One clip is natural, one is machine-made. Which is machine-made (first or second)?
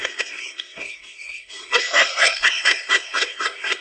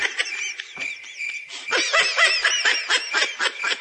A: first